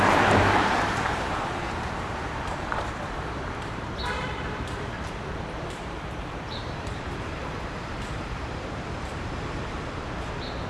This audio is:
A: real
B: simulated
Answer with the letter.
B